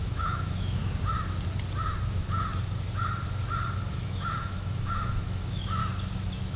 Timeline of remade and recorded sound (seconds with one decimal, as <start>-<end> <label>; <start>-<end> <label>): 0.0-0.8 remade; 0.8-3.9 recorded; 3.9-5.8 remade; 5.8-6.6 recorded